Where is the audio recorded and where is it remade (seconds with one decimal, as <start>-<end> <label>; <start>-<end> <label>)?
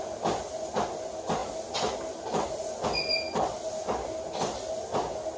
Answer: 0.0-5.4 recorded